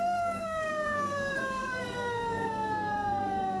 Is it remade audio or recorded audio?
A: remade